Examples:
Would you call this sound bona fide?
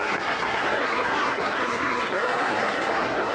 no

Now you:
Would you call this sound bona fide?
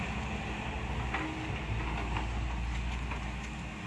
yes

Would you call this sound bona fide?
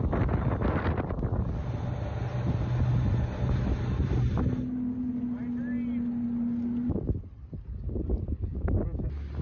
yes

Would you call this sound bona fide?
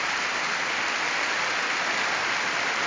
yes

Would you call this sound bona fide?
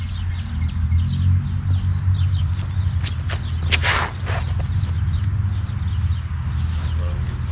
yes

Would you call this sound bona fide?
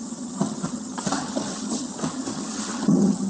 no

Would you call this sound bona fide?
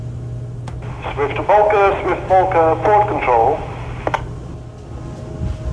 yes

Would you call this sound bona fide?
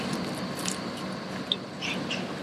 yes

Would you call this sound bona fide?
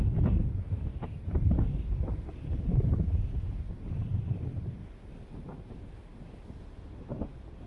yes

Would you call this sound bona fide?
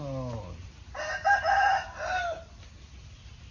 yes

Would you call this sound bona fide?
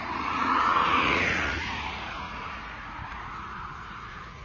no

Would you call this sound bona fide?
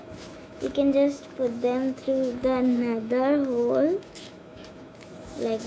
no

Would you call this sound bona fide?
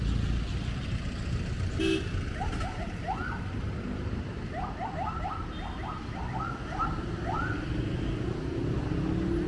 yes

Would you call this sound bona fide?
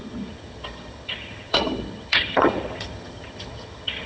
no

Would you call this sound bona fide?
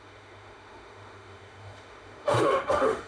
no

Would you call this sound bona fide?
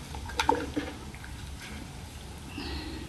yes